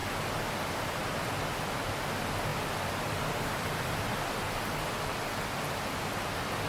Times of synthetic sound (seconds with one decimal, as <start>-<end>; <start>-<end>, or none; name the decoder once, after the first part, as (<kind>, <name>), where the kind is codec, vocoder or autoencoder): 0.0-1.3 (vocoder, BigVGAN v2); 2.5-4.3